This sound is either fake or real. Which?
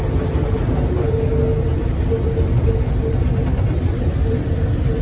real